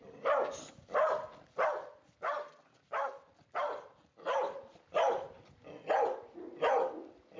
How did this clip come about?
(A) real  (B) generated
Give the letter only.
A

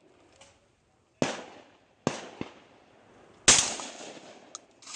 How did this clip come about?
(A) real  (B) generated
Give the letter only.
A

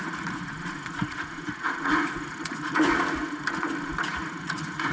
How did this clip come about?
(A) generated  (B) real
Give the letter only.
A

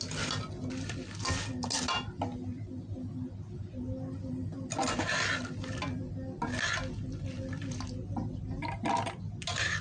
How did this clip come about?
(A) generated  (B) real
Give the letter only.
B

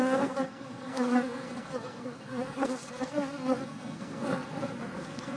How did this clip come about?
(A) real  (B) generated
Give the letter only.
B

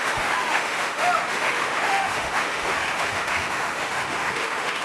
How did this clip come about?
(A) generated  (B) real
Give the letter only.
A